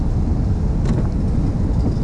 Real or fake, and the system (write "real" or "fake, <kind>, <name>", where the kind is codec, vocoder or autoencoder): real